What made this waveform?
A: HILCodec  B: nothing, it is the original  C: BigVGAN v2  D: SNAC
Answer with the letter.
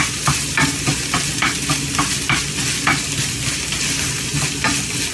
B